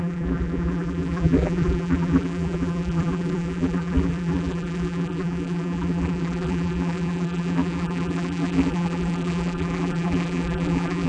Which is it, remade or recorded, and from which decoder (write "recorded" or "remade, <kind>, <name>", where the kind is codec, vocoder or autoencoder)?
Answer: remade, vocoder, BigVGAN v2